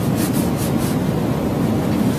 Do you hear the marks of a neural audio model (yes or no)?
no